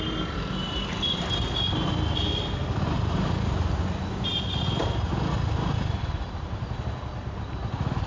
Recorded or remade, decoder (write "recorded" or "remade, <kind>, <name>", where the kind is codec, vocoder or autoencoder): recorded